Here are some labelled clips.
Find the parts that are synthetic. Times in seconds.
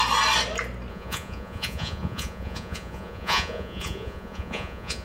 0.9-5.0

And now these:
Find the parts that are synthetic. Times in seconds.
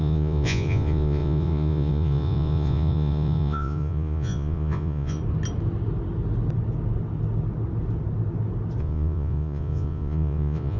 0.0-5.2; 8.8-10.8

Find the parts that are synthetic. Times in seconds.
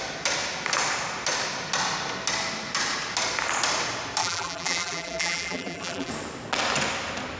4.2-6.1